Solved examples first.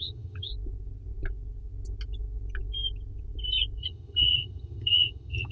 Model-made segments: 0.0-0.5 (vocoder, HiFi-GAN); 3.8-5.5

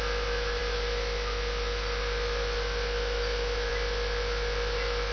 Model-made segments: none

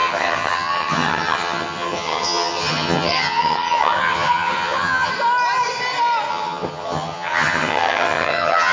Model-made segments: 0.0-5.1 (vocoder, HiFi-GAN); 6.3-8.7

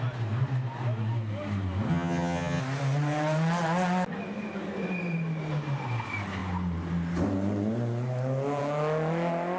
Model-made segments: 1.9-2.6 (vocoder, HiFi-GAN)